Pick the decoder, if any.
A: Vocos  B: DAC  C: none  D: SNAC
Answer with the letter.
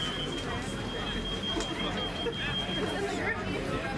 C